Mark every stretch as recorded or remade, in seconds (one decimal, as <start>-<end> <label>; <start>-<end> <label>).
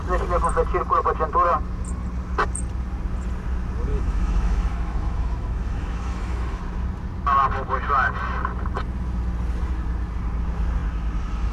0.0-3.9 recorded; 3.9-6.6 remade; 6.6-11.5 recorded